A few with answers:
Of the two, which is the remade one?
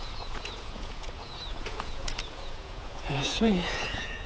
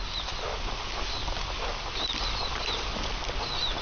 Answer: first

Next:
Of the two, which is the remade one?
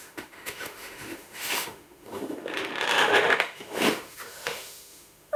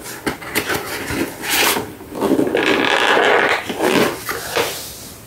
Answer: first